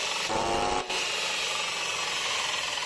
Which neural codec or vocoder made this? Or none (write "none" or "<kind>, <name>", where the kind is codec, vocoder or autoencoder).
none